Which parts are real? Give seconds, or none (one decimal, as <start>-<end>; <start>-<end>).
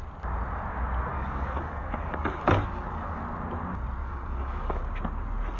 0.0-1.1; 3.2-4.0; 4.8-5.6